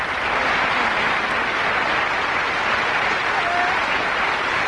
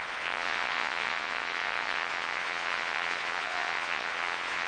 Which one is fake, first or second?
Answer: second